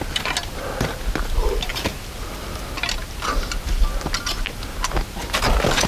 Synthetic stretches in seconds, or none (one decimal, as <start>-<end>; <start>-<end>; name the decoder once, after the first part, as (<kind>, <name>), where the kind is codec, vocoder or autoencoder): none